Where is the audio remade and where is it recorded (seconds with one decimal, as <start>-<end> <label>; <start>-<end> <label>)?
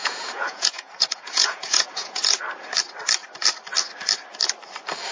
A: 0.0-2.2 remade; 2.2-5.1 recorded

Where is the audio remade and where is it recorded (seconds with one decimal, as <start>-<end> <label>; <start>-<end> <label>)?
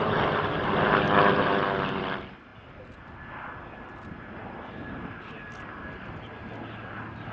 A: 0.0-7.3 recorded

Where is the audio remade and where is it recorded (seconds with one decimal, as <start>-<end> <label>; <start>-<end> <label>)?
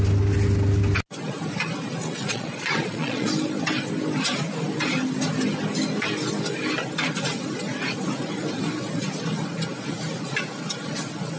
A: 0.0-2.0 recorded; 2.0-3.3 remade; 3.3-11.4 recorded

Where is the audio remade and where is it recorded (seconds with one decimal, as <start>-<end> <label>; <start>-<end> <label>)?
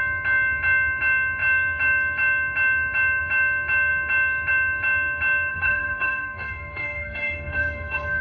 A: 0.0-5.5 recorded; 5.5-8.2 remade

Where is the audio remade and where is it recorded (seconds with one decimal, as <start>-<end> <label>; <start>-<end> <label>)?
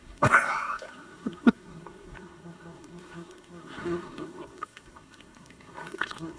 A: 0.0-6.4 remade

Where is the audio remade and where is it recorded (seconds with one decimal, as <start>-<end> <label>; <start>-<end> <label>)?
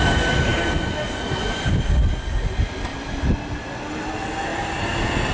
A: 0.0-5.3 recorded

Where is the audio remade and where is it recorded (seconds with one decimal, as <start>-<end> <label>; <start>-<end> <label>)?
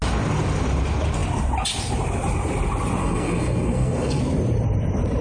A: 0.0-3.0 recorded; 3.0-4.2 remade; 4.2-5.2 recorded